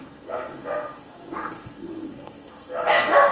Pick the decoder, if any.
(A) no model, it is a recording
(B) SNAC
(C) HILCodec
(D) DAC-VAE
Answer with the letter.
B